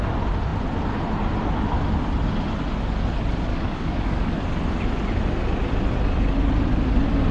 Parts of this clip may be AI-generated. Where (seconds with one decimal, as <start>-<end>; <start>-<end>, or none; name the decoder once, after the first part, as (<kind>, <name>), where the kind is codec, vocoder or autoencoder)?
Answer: 3.5-4.4 (codec, DAC)